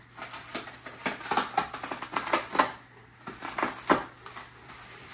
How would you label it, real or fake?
real